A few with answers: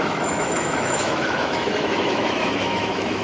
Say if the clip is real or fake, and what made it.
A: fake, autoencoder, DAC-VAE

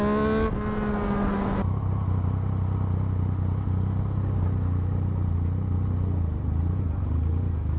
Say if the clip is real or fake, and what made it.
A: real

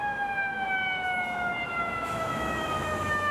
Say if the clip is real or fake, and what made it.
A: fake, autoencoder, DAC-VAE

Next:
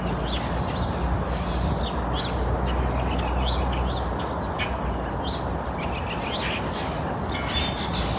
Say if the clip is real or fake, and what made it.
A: real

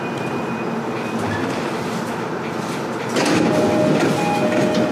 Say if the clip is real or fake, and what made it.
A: real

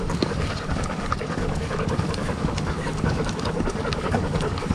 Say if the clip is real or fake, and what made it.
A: fake, codec, DAC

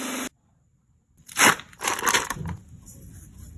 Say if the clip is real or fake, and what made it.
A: real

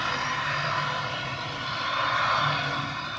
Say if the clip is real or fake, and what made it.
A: real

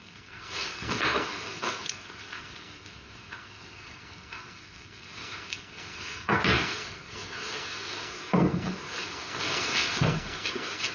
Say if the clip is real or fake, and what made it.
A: fake, codec, SNAC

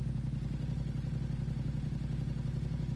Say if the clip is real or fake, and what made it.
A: real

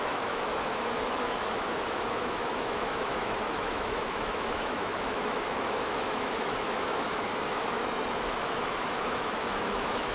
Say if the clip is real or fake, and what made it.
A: fake, autoencoder, DAC-VAE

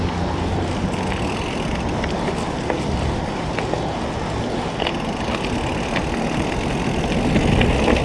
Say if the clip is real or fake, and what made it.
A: real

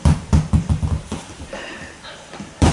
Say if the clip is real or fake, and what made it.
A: fake, vocoder, BigVGAN v2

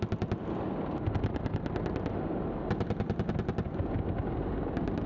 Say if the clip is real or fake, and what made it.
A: real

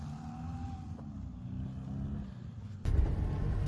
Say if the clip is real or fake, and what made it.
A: real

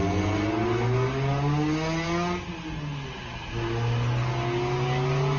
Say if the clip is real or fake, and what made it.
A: real